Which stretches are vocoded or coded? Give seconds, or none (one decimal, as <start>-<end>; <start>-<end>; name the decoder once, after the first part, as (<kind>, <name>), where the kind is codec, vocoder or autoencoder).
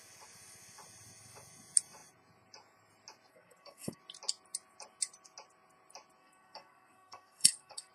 3.3-4.0 (codec, SNAC); 6.2-7.9